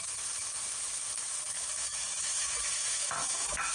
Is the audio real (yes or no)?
no